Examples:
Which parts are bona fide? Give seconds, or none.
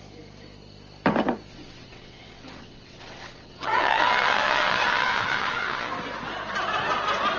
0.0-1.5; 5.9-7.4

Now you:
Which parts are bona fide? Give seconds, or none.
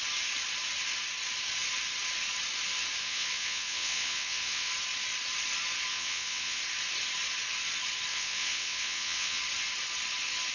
0.0-3.0; 4.7-5.9; 6.6-8.1; 9.4-10.5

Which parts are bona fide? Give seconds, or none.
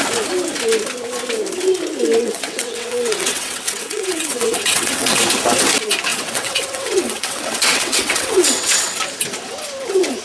0.0-2.2; 5.2-6.1; 9.0-10.2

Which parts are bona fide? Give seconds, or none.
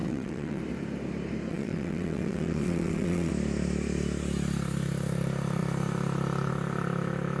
0.6-1.5; 3.3-7.4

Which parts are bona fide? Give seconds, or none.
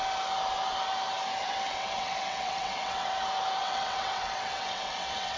0.0-1.4; 3.1-3.6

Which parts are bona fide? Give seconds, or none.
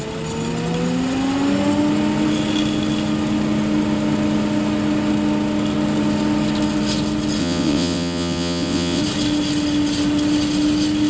0.0-7.4; 9.0-11.1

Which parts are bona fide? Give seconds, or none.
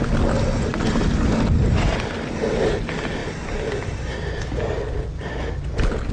0.0-6.1